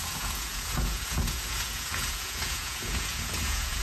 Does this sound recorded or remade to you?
remade